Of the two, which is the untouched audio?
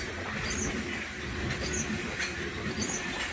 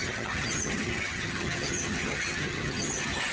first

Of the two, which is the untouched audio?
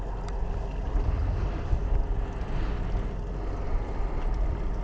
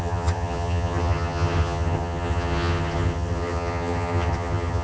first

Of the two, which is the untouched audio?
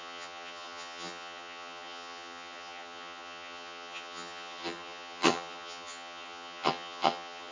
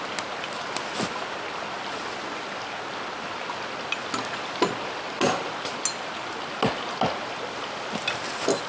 second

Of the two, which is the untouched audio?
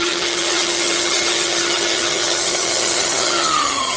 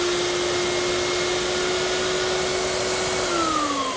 second